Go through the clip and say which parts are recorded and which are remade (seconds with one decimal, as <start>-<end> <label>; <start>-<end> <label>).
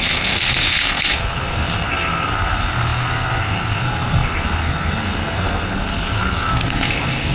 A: 0.0-7.3 remade